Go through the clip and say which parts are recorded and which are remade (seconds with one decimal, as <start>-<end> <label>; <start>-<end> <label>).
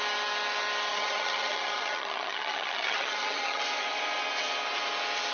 0.0-0.9 recorded; 0.9-3.6 remade; 3.6-5.3 recorded